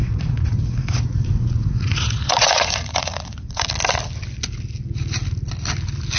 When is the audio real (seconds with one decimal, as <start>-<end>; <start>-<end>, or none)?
3.7-6.2